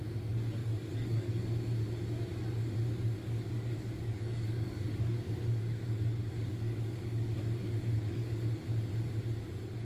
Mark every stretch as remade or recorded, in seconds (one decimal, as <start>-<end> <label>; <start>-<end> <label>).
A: 0.0-0.6 recorded; 0.6-1.3 remade; 1.3-3.2 recorded; 3.2-8.4 remade; 8.4-9.8 recorded